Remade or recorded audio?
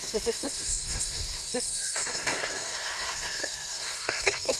remade